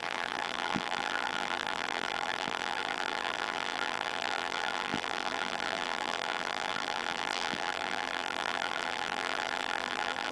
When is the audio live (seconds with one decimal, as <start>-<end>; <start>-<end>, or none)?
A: none

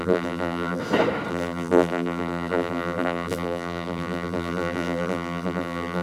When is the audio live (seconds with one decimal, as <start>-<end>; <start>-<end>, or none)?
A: 0.8-1.3

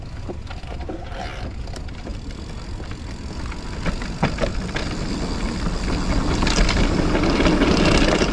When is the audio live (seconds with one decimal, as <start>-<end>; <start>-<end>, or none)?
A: 0.0-2.1; 2.9-8.3

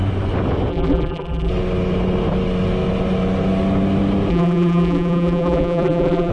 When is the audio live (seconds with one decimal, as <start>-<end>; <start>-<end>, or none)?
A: 0.0-0.7; 1.5-4.3

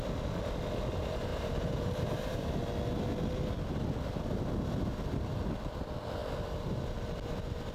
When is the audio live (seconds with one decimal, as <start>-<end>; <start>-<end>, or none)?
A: 0.0-1.3; 2.6-7.7